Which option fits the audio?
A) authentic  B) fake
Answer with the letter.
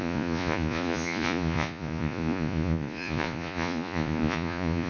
B